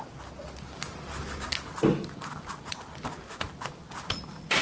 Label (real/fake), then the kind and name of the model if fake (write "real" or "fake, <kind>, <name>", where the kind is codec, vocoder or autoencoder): real